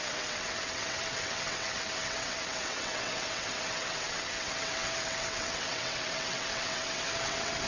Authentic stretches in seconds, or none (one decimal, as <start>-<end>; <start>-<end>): none